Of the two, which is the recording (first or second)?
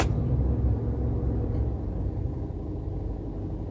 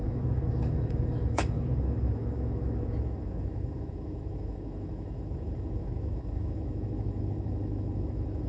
first